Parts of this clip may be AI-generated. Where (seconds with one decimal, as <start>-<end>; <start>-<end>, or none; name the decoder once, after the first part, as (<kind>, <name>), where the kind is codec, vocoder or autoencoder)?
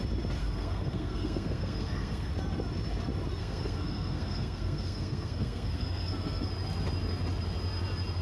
0.4-2.3 (codec, SNAC); 3.4-6.5